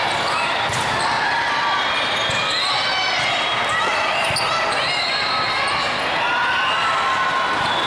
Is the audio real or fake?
real